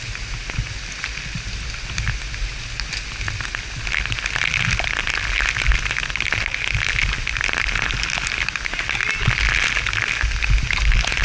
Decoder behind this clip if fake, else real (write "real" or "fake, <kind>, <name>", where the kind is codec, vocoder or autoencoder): real